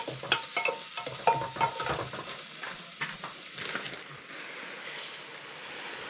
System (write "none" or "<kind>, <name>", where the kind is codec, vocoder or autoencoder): none